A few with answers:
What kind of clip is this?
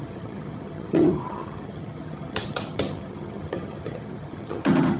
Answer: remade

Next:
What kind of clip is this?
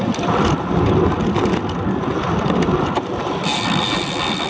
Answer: recorded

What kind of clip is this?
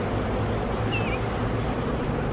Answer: recorded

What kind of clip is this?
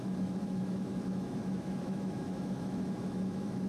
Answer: remade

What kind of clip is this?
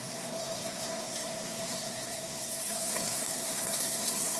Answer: remade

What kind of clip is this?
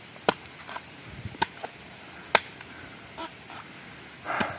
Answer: recorded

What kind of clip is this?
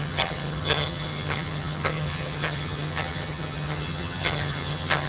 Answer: remade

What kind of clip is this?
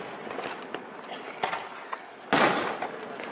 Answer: recorded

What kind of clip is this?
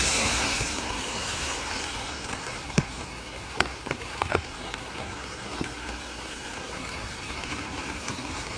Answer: remade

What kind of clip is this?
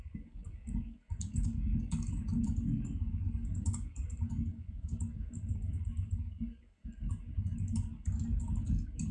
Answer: remade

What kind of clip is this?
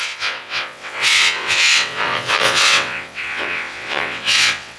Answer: remade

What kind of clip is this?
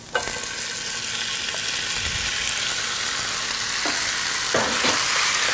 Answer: recorded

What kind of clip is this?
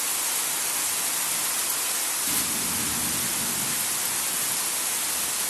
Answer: recorded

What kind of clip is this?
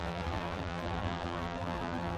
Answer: remade